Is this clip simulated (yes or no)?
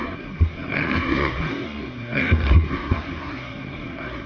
yes